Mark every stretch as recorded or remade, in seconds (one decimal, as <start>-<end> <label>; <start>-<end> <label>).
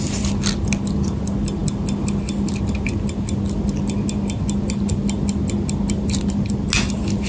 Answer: 0.0-7.3 recorded